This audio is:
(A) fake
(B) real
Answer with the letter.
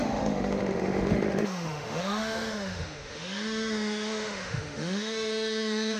A